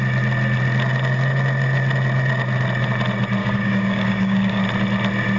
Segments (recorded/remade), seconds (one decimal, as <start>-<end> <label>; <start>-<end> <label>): 0.0-3.4 recorded; 3.4-4.6 remade; 4.6-5.4 recorded